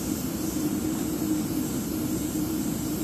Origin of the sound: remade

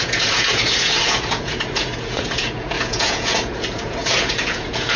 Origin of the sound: remade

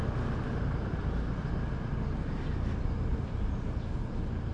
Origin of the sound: recorded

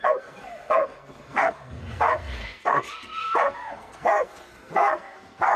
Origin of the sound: remade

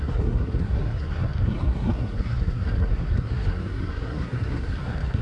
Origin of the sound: remade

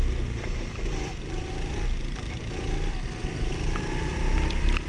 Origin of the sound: remade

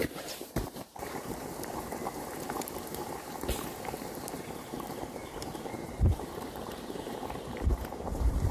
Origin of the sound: remade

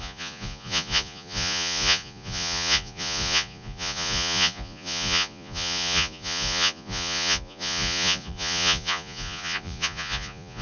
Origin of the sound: remade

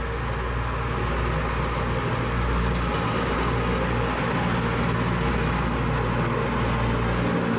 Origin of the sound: recorded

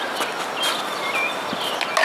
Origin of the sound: recorded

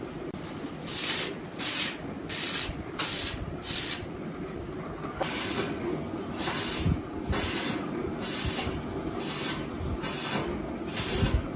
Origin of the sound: recorded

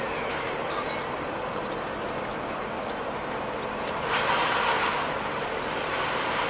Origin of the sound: remade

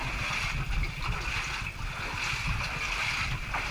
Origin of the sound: recorded